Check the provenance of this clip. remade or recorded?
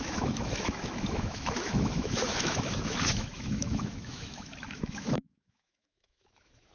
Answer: remade